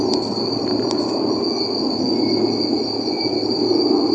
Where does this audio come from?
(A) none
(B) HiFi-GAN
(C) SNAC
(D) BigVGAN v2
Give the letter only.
A